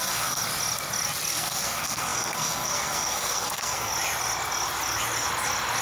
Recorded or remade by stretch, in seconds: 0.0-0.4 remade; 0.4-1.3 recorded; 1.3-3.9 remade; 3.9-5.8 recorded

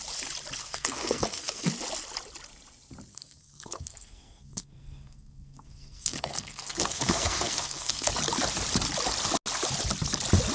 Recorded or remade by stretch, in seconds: 0.0-0.6 recorded; 0.6-1.7 remade; 1.7-3.1 recorded; 3.1-8.1 remade; 8.1-10.5 recorded

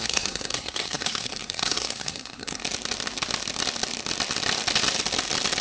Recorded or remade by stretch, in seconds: 0.0-2.6 remade; 2.6-5.6 recorded

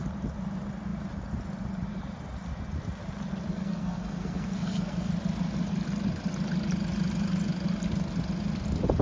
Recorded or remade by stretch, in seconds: 0.0-3.5 recorded; 3.5-5.1 remade; 5.1-9.0 recorded

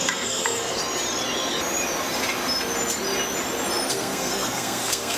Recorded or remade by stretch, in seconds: 0.0-0.8 remade; 0.8-3.9 recorded; 3.9-5.2 remade